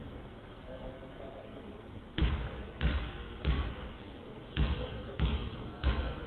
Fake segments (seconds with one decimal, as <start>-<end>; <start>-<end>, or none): 0.0-6.3